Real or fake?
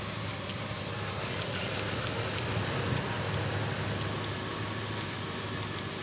real